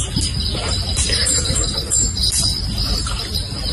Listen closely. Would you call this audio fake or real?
real